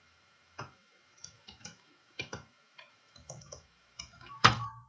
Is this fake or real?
fake